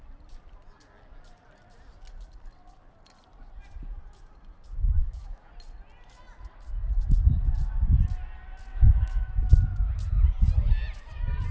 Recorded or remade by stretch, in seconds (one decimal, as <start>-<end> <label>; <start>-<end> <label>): 0.0-5.0 recorded; 5.0-5.5 remade; 5.5-8.7 recorded; 8.7-9.3 remade; 9.3-11.5 recorded